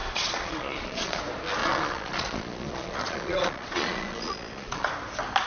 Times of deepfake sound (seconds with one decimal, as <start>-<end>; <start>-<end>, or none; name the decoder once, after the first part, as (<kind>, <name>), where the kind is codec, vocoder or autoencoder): 0.0-1.2 (vocoder, Vocos); 1.6-4.9